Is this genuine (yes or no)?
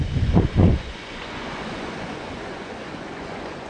no